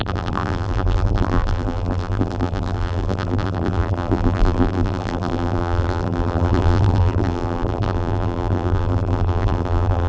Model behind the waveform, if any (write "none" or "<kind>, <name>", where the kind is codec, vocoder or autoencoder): vocoder, BigVGAN v2